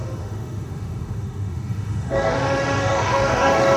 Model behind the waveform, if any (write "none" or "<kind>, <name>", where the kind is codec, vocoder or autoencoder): autoencoder, DAC-VAE